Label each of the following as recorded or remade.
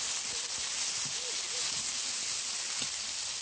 recorded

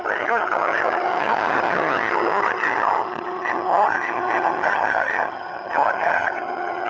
remade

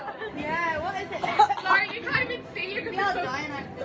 recorded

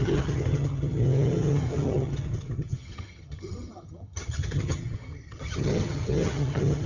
remade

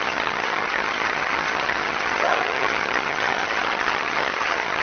remade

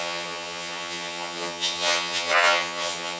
remade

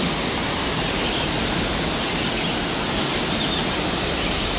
recorded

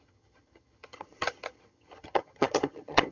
remade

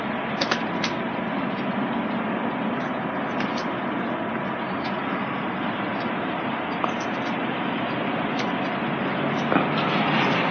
recorded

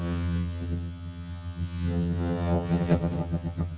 remade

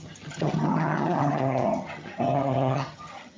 remade